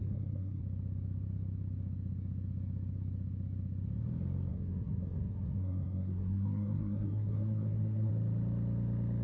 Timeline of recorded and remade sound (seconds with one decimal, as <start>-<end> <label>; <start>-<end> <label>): 0.0-0.6 remade; 0.6-4.5 recorded; 4.5-8.1 remade; 8.1-9.2 recorded